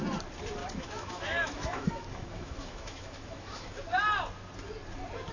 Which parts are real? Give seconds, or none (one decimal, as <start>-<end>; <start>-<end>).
0.0-0.6; 3.8-5.3